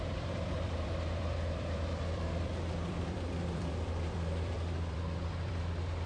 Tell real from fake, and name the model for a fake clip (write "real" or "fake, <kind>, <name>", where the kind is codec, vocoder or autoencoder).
fake, vocoder, BigVGAN v2